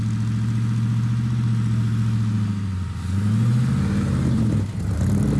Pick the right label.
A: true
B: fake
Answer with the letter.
A